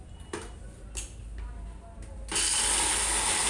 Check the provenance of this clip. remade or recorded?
recorded